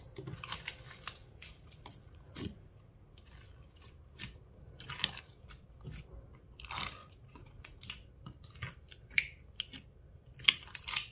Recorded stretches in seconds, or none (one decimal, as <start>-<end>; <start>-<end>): 0.0-1.2; 3.3-7.0; 7.8-11.1